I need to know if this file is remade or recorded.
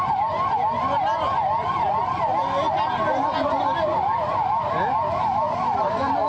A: recorded